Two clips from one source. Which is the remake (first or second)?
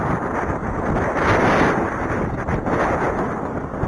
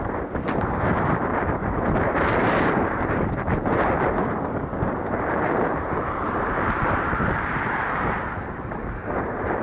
second